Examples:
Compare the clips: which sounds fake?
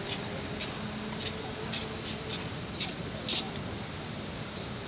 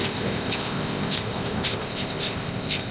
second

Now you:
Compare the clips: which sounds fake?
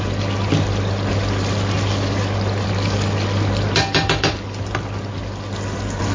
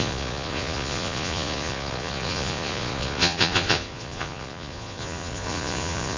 second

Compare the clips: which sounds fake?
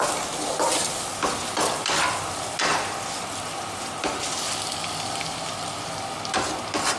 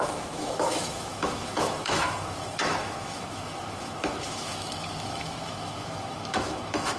second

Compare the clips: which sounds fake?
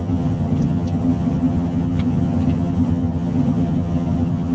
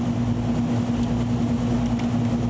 first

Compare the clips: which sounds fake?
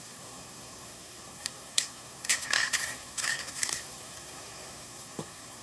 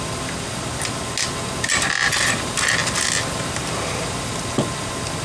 first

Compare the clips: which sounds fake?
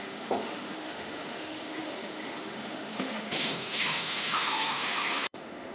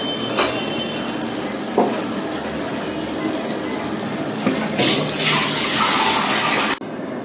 first